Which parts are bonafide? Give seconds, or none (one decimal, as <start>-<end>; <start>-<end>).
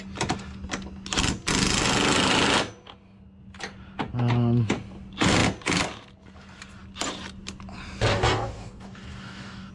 0.0-8.1